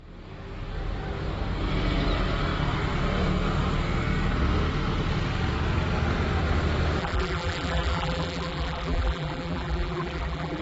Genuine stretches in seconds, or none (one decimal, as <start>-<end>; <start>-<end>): 0.0-7.0